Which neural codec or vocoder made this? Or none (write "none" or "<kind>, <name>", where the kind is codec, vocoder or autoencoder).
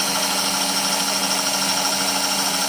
none